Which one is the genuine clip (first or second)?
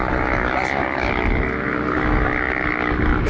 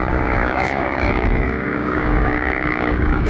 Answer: first